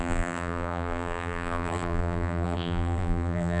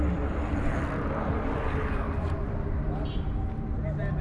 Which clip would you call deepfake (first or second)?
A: first